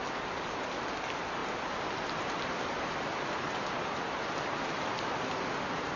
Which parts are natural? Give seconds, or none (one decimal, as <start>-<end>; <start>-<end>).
0.0-6.0